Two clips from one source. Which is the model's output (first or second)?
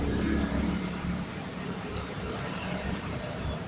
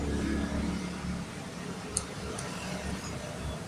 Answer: first